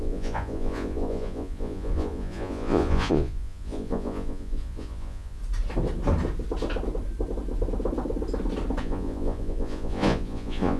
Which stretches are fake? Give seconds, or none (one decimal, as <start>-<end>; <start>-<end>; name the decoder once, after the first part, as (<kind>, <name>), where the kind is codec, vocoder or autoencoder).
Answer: 0.0-5.4 (vocoder, Vocos); 8.8-10.8

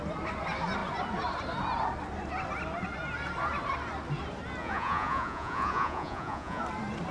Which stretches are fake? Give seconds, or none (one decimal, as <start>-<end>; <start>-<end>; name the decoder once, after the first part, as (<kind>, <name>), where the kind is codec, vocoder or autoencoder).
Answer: 4.6-6.6 (vocoder, Vocos)

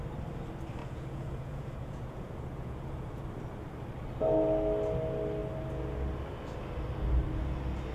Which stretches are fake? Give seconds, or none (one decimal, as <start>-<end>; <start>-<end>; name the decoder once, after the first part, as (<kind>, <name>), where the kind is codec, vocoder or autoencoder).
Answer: 0.8-3.2 (vocoder, Vocos)

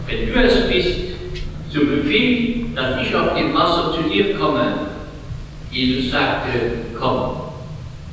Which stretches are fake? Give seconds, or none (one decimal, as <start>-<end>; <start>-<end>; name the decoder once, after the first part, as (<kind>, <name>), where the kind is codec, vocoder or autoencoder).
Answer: 3.3-4.2 (vocoder, Vocos); 4.9-7.2

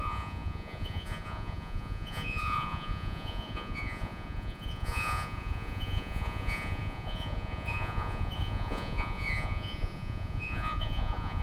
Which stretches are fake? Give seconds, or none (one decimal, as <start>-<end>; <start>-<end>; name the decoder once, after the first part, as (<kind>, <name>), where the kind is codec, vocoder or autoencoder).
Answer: 0.0-11.4 (vocoder, Vocos)

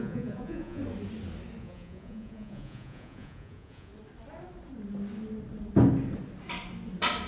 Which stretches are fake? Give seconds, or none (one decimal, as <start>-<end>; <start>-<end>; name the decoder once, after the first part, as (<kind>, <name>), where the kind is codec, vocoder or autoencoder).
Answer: 0.0-0.8 (vocoder, Vocos); 1.6-3.9